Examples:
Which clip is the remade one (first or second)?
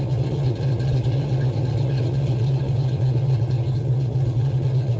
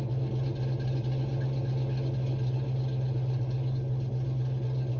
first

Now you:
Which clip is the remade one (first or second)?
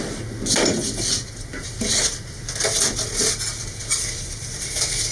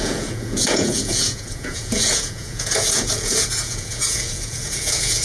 second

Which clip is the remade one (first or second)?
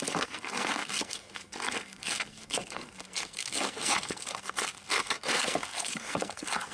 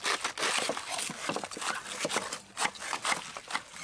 first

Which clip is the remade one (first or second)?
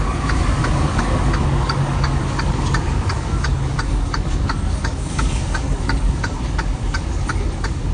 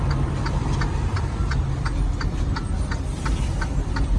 first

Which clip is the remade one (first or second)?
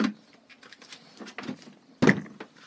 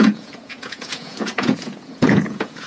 second